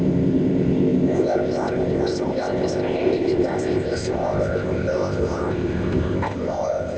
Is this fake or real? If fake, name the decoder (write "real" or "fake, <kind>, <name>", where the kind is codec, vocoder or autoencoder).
fake, codec, ZipCodec